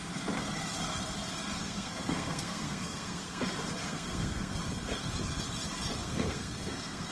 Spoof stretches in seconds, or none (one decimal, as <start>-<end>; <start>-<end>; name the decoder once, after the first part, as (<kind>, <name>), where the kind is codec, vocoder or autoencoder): 1.6-3.4 (codec, SNAC); 3.8-4.6; 6.0-7.1